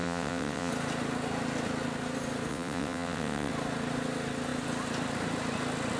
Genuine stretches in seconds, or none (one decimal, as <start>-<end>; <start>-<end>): 0.7-2.5; 3.5-6.0